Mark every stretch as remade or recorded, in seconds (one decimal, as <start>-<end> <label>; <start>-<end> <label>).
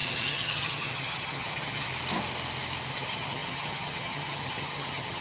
0.0-1.9 remade; 1.9-2.9 recorded; 2.9-5.2 remade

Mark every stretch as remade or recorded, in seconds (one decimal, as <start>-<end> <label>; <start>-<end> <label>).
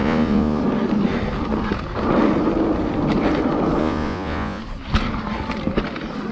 0.0-0.6 remade; 0.6-3.8 recorded; 3.8-4.6 remade; 4.6-6.3 recorded